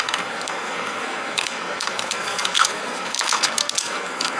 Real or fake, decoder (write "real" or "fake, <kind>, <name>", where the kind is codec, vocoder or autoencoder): fake, codec, SNAC